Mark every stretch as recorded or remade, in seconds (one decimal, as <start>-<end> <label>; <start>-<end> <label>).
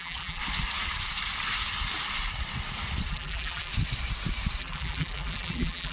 0.0-0.4 remade; 0.4-3.1 recorded; 3.1-3.7 remade; 3.7-4.6 recorded; 4.6-5.9 remade